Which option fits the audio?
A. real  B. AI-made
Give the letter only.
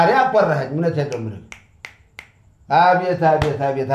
A